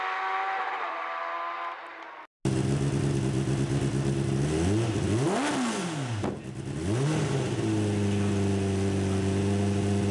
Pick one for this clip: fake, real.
real